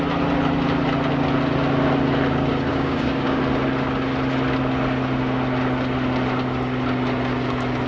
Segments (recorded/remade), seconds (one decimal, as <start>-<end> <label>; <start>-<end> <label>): 0.0-2.7 recorded; 2.7-3.4 remade; 3.4-7.9 recorded